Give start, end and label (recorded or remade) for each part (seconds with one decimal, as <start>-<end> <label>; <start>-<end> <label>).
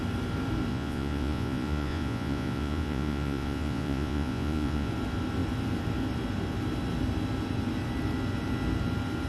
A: 0.0-0.7 recorded; 0.7-4.9 remade; 4.9-9.3 recorded